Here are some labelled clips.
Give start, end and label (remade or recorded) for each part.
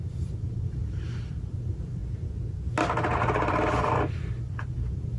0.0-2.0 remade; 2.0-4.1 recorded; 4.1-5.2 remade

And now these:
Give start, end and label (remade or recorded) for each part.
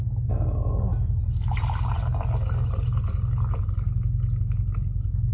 0.0-5.3 recorded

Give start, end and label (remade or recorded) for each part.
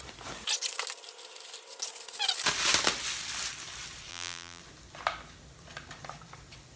0.0-4.1 recorded; 4.1-4.6 remade; 4.6-6.8 recorded